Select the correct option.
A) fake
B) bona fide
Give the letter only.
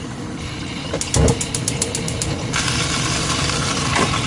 A